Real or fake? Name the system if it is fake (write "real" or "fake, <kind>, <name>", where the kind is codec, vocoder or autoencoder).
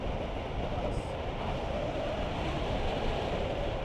real